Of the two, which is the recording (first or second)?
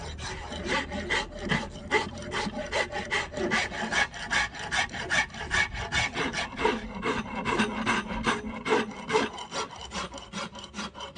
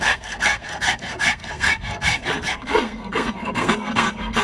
first